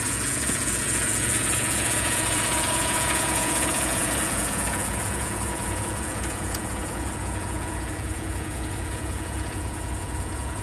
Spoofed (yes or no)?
yes